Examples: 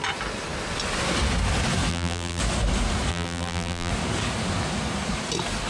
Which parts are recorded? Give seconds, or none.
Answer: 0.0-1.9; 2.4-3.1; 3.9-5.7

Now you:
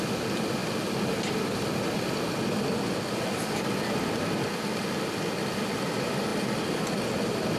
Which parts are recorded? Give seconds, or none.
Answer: 0.0-7.6

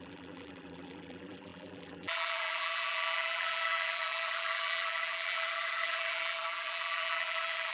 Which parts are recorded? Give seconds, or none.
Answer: none

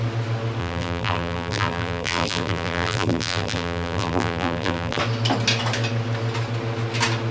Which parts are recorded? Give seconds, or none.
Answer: 0.0-0.6; 5.0-7.3

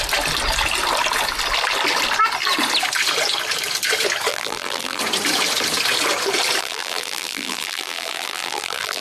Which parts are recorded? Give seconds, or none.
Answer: 0.0-4.3; 5.0-6.6

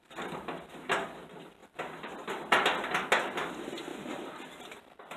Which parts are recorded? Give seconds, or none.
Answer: 0.0-5.2

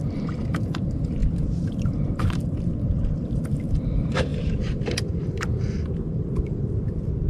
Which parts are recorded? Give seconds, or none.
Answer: none